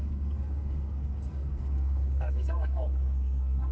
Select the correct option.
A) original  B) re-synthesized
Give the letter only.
B